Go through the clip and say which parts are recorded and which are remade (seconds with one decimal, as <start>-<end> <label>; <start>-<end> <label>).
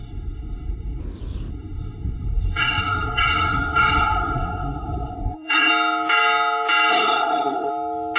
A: 0.0-1.0 remade; 1.0-1.5 recorded; 1.5-5.7 remade; 5.7-6.9 recorded; 6.9-7.7 remade; 7.7-8.2 recorded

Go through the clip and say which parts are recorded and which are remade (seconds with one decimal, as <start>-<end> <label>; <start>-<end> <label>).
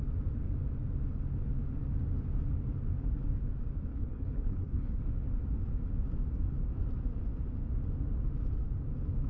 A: 0.0-3.9 recorded; 3.9-5.0 remade; 5.0-9.3 recorded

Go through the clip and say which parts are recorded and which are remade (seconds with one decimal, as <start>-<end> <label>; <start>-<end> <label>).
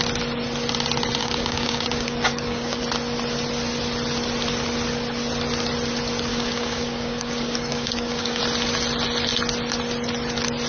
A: 0.0-1.2 recorded; 1.2-2.8 remade; 2.8-6.3 recorded; 6.3-8.4 remade; 8.4-10.7 recorded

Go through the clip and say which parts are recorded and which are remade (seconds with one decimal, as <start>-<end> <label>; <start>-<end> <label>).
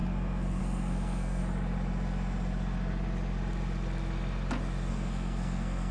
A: 0.0-1.4 remade; 1.4-4.9 recorded; 4.9-5.9 remade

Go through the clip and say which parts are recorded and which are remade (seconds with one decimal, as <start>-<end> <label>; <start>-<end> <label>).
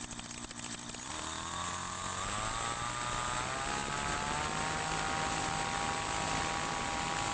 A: 0.0-7.3 recorded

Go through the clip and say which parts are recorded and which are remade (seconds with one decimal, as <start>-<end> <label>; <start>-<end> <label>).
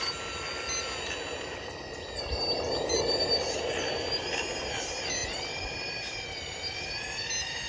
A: 0.0-7.7 recorded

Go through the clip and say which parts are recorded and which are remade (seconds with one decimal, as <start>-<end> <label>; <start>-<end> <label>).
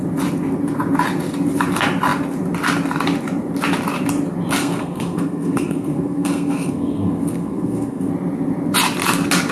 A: 0.0-4.6 recorded; 4.6-8.1 remade; 8.1-9.5 recorded